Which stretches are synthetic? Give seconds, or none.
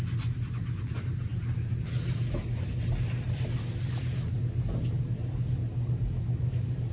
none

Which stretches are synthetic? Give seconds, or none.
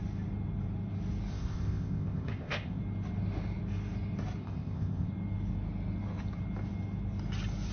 1.3-2.8; 4.4-5.1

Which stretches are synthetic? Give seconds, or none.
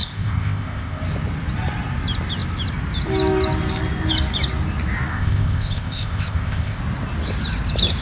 0.0-1.0; 5.1-6.8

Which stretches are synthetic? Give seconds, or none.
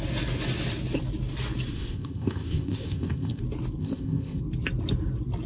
1.7-3.4; 3.8-4.4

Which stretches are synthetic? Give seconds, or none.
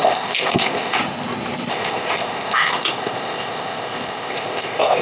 0.0-1.0; 1.7-5.0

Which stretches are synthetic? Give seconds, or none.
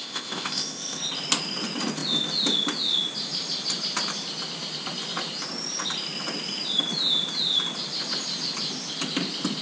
0.0-1.0